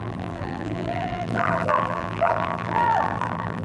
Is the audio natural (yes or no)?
no